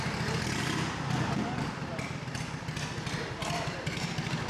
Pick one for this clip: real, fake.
real